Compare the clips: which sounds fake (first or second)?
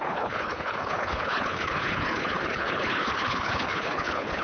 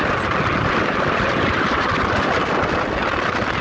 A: first